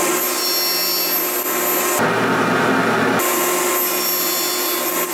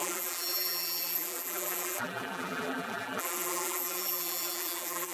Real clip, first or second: first